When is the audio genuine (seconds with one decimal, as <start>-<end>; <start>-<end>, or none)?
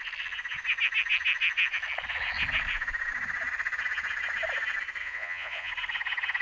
0.0-5.0; 5.7-6.4